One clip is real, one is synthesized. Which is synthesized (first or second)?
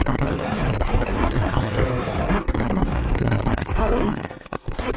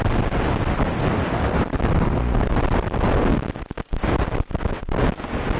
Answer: first